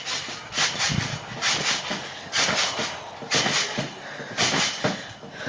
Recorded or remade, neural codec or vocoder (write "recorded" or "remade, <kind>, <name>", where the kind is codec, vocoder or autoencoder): recorded